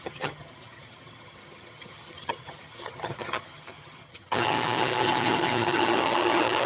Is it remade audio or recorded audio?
remade